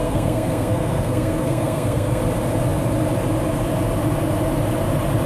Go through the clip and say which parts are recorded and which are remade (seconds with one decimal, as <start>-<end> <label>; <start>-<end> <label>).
0.0-2.2 remade; 2.2-5.3 recorded